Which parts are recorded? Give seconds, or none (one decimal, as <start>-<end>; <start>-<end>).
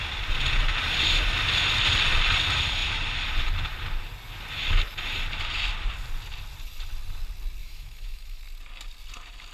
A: 0.0-7.6; 8.4-9.5